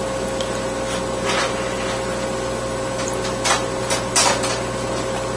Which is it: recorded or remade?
recorded